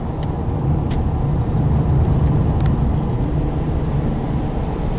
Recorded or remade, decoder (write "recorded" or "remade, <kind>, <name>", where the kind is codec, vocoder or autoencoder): recorded